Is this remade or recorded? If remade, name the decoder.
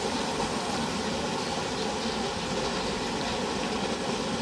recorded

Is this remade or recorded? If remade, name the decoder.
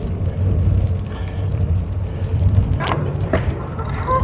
recorded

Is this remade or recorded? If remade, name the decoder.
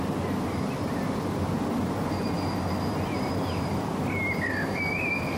recorded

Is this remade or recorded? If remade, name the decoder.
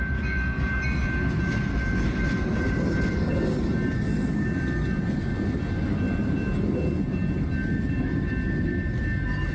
recorded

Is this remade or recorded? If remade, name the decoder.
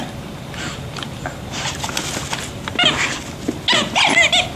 recorded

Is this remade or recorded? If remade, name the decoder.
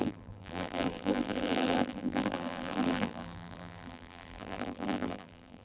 remade, vocoder, BigVGAN v2